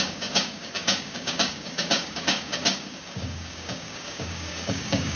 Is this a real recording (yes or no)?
no